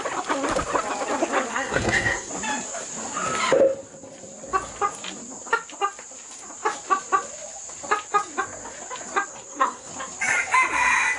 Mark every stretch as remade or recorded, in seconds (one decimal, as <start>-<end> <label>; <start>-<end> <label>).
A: 0.0-1.5 recorded; 1.5-2.3 remade; 2.3-9.3 recorded; 9.3-9.9 remade; 9.9-11.2 recorded